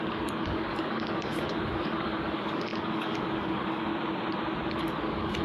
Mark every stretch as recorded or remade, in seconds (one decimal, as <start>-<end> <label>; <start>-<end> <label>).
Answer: 0.0-3.9 remade; 3.9-4.7 recorded; 4.7-5.4 remade